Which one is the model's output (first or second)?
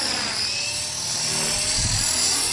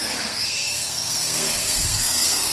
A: second